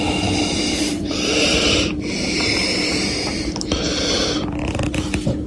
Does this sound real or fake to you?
fake